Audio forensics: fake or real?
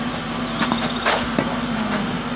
real